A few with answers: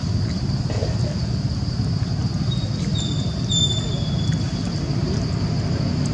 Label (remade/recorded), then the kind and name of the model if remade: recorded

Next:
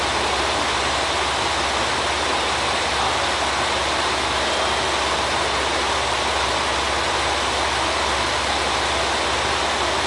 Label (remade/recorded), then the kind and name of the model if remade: recorded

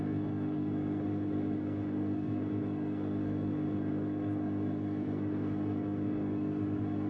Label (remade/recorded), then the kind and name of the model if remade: remade, codec, SNAC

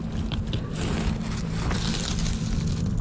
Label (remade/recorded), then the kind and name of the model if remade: recorded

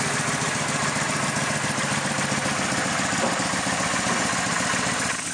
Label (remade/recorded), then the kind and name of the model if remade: recorded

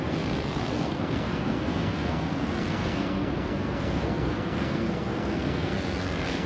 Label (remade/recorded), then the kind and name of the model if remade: remade, codec, SNAC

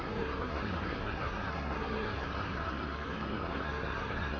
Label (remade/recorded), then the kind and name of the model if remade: remade, codec, SNAC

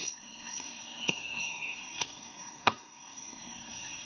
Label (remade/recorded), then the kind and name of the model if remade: remade, codec, SNAC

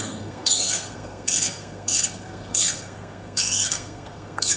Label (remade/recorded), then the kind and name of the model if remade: remade, codec, SNAC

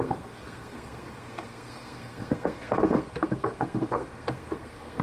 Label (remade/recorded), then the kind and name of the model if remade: remade, codec, SNAC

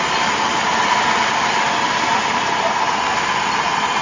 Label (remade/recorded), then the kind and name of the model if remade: recorded